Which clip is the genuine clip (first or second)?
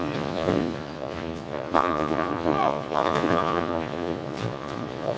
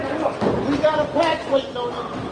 second